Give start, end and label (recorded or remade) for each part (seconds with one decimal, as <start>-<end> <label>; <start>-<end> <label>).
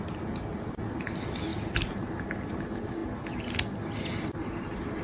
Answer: 0.0-5.0 recorded